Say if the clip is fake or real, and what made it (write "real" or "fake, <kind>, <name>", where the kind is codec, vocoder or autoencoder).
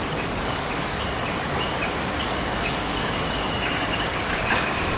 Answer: fake, codec, DAC